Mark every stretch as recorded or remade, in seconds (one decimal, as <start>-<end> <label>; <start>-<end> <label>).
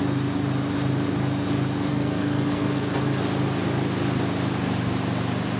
0.0-1.9 recorded; 1.9-3.2 remade; 3.2-5.6 recorded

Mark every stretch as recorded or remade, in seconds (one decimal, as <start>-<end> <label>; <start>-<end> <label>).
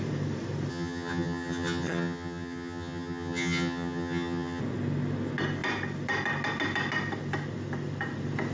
0.0-0.7 recorded; 0.7-4.6 remade; 4.6-8.5 recorded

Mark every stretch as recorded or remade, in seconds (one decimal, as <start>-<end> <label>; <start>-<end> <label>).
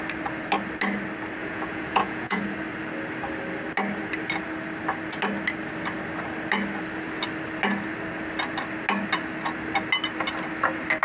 0.0-1.4 recorded; 1.4-2.4 remade; 2.4-11.0 recorded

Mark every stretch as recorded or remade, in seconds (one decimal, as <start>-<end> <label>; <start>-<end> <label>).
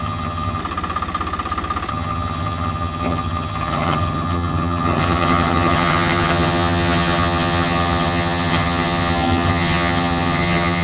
0.0-0.6 remade; 0.6-1.9 recorded; 1.9-10.8 remade